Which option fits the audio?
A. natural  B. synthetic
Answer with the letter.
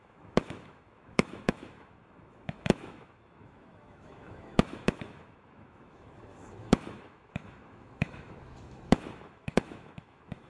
B